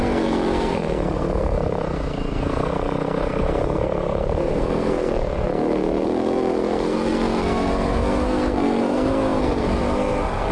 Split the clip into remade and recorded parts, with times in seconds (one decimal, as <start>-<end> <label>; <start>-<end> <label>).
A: 0.0-10.5 remade